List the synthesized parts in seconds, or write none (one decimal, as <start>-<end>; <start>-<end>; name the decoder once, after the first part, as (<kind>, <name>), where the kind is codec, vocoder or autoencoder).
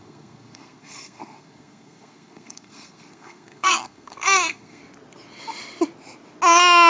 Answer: 0.0-4.8 (codec, SNAC)